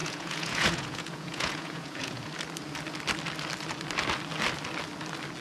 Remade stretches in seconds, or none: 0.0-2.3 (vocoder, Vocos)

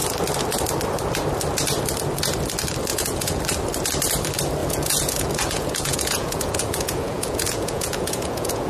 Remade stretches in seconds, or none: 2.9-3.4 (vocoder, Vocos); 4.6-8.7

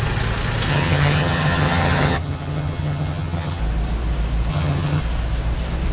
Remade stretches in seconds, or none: 0.7-3.6 (vocoder, HiFi-GAN); 4.5-5.0